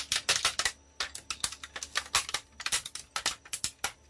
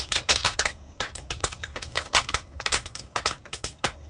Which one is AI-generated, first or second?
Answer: second